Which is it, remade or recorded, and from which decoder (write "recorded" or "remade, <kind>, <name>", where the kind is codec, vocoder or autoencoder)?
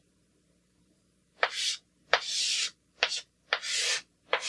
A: remade, vocoder, BigVGAN v2